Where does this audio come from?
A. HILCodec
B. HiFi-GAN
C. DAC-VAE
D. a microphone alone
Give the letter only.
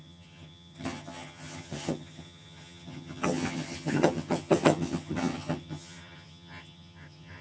B